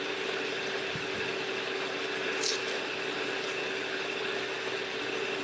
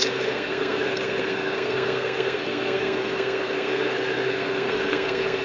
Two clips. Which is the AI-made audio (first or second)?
second